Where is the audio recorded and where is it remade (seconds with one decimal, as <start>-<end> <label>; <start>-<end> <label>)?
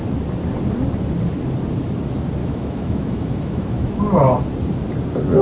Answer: 0.0-2.4 recorded; 2.4-4.0 remade; 4.0-5.4 recorded